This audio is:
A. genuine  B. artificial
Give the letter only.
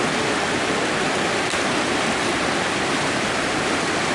A